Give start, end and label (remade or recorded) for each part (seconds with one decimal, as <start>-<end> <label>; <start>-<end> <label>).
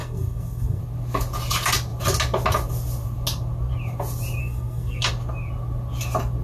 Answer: 0.0-0.8 remade; 0.8-4.4 recorded; 4.4-5.1 remade; 5.1-6.4 recorded